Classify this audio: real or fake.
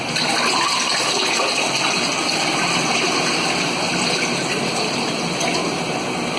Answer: real